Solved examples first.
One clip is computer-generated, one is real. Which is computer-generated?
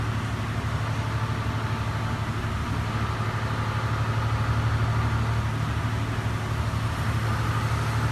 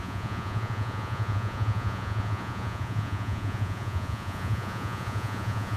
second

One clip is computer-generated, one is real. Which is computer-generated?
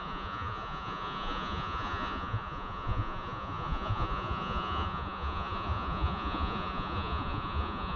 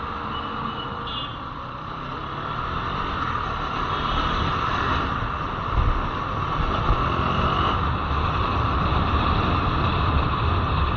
first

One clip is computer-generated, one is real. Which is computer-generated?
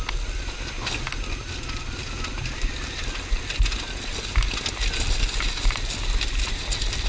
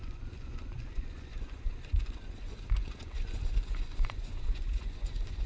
second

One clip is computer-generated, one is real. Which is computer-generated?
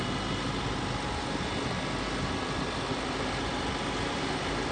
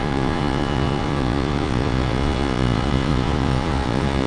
second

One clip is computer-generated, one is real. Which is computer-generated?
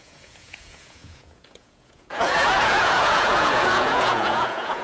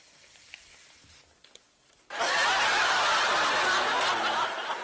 first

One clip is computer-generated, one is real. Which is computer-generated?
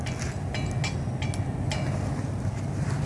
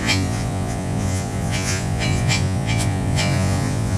second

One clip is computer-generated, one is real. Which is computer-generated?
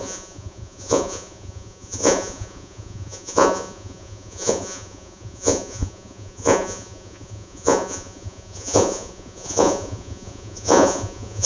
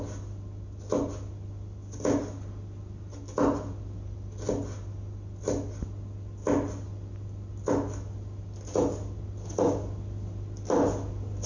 first